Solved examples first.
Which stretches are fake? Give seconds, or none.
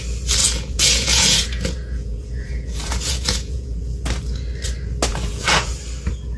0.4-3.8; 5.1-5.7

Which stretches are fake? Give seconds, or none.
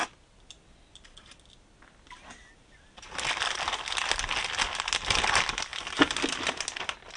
none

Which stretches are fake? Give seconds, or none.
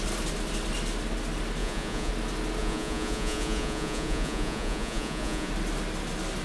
1.6-2.1; 2.6-5.5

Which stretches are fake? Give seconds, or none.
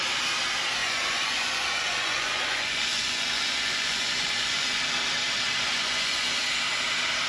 0.8-4.8; 5.7-6.4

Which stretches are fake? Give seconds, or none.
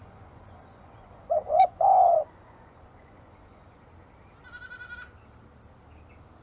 0.0-3.8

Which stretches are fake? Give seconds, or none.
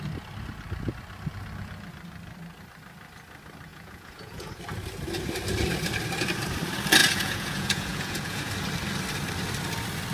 3.7-4.6; 7.0-8.5